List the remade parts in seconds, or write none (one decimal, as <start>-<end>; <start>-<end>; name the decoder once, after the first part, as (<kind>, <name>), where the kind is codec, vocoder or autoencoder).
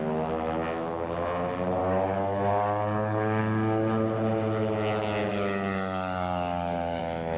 1.8-3.4 (codec, DAC); 5.3-7.0